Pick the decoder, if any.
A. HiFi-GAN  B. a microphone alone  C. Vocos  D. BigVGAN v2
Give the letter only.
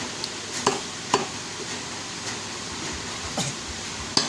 B